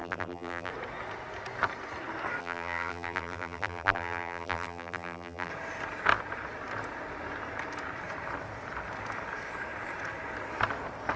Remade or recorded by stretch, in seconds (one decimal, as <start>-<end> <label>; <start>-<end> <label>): 0.0-0.7 remade; 0.7-2.4 recorded; 2.4-5.5 remade; 5.5-11.2 recorded